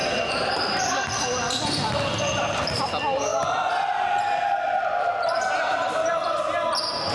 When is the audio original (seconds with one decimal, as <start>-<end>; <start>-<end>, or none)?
2.8-3.3; 6.4-7.1